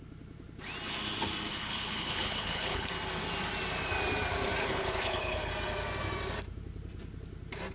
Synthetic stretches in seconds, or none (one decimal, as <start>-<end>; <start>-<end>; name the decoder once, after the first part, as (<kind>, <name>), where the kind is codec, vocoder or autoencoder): 1.5-2.9 (codec, HILCodec); 4.6-5.5

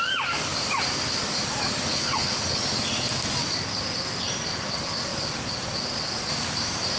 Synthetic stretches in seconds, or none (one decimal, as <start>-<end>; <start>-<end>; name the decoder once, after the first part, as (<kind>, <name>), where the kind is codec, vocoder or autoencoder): 1.9-2.6 (codec, HILCodec)

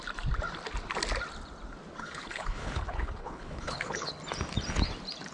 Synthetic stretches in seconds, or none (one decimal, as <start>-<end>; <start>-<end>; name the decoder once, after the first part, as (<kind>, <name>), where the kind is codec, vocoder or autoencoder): 2.0-4.1 (codec, HILCodec)

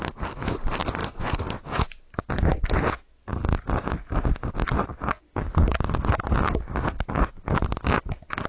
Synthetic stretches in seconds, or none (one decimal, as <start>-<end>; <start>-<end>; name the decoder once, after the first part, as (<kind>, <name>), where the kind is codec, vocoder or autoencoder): none

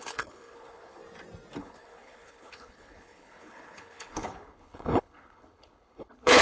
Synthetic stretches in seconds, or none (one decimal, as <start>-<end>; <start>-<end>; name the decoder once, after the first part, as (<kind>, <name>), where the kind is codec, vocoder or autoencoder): 0.0-1.0 (codec, HILCodec); 1.6-6.4